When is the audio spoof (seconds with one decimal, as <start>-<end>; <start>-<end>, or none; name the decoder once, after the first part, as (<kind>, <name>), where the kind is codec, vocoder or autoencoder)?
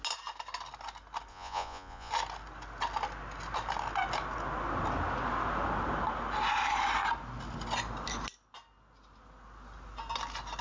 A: 1.3-2.1 (vocoder, Vocos)